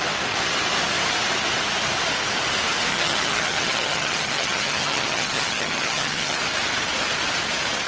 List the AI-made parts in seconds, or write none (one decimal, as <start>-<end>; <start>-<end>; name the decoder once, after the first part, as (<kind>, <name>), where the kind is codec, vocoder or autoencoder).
2.9-6.4 (vocoder, HiFi-GAN)